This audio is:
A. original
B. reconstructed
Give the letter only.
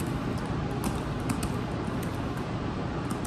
A